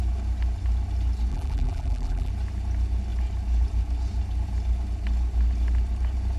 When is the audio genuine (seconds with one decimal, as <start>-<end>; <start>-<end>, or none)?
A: 0.0-1.3; 2.3-6.4